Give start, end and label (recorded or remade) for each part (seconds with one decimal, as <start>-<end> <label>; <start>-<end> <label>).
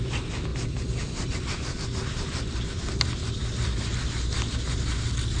0.0-5.4 recorded